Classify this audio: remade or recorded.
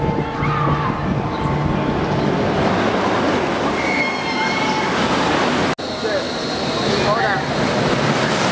recorded